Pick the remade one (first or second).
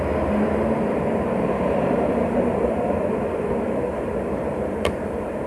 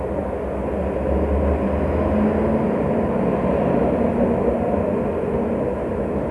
first